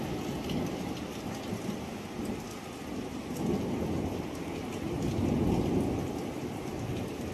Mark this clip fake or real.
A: real